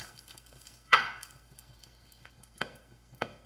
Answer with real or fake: fake